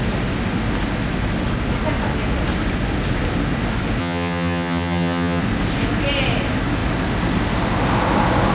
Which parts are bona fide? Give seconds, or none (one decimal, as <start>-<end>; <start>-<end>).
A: 0.0-4.0; 5.4-8.5